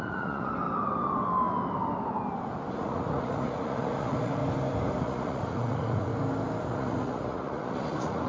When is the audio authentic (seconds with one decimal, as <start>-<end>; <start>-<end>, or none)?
0.5-2.7; 4.4-5.0; 6.1-6.7